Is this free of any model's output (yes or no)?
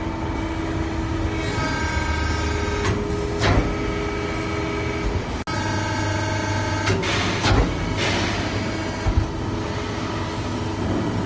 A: yes